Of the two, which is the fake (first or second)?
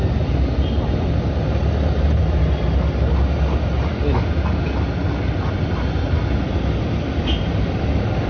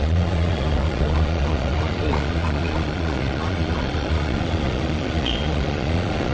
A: second